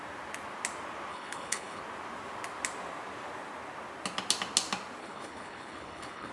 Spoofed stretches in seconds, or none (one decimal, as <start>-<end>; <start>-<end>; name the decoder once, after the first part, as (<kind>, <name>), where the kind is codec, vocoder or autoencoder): 1.1-1.8 (codec, HILCodec); 5.0-6.3